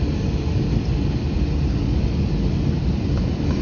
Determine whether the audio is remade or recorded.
recorded